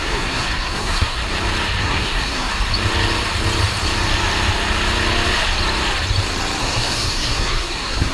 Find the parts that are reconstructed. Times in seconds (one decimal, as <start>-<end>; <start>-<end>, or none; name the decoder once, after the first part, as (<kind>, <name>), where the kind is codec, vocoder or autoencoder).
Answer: 0.0-1.2 (codec, SNAC); 1.8-2.5; 6.6-8.1